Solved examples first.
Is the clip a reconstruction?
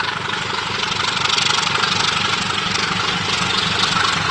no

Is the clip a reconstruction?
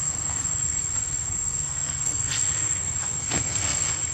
yes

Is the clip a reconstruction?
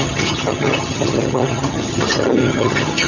yes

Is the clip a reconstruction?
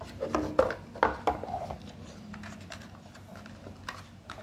no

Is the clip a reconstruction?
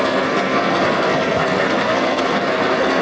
yes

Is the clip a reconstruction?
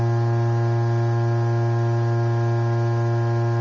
no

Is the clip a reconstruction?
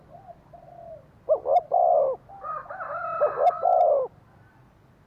no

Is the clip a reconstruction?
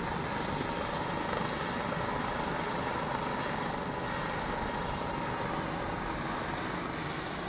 no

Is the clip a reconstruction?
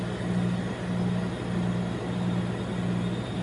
no